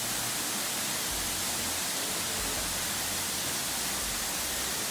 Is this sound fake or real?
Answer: real